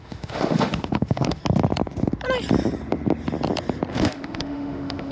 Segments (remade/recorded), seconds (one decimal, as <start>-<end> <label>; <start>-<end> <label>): 0.0-1.4 remade; 1.4-3.9 recorded; 3.9-5.1 remade